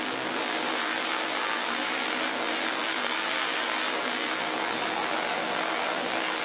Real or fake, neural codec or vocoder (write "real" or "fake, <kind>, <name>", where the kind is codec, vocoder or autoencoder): fake, vocoder, BigVGAN v2